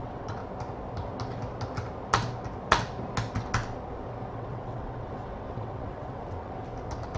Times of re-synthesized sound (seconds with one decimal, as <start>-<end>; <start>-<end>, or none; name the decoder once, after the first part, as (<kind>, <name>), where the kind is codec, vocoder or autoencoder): 0.0-0.4 (vocoder, WaveNeXt); 4.3-6.6